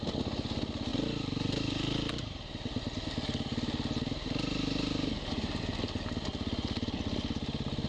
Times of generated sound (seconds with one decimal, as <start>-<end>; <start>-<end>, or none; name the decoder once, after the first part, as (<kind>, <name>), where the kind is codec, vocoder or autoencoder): none